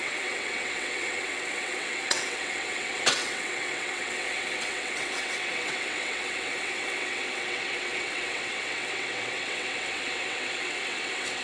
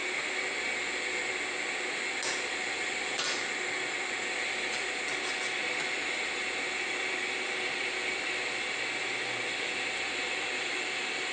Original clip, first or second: second